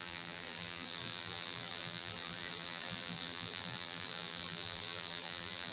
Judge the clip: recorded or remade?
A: remade